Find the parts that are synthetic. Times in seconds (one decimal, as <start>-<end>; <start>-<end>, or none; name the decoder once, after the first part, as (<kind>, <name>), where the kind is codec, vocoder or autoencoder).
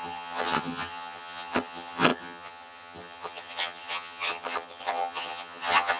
0.0-6.0 (vocoder, HiFi-GAN)